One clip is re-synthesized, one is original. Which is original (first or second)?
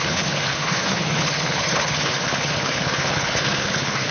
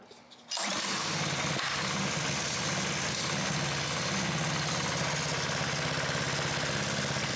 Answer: second